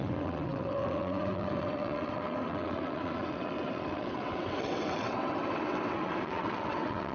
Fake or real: fake